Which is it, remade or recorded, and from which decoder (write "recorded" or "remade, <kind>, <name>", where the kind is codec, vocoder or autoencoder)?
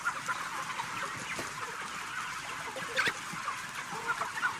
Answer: recorded